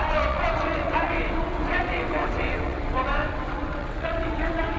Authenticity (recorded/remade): remade